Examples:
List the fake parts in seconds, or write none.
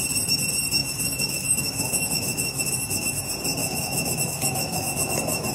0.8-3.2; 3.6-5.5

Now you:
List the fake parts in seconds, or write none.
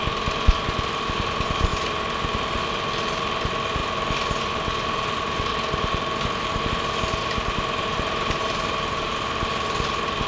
5.5-6.7; 7.2-9.5